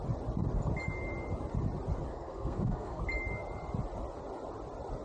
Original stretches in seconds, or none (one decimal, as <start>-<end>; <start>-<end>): 0.0-2.1; 3.0-5.0